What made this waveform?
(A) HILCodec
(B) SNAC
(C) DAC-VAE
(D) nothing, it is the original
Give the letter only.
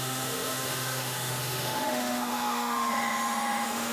C